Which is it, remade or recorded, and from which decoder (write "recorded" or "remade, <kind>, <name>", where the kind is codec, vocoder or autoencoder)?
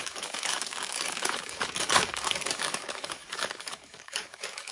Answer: remade, codec, DAC